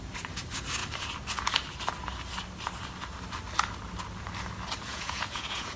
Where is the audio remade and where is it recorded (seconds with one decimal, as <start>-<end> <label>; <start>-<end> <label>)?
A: 0.0-4.9 recorded; 4.9-5.8 remade